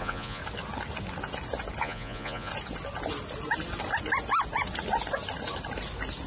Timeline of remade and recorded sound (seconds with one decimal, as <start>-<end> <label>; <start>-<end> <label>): 0.0-0.4 remade; 0.4-1.8 recorded; 1.8-2.5 remade; 2.5-6.3 recorded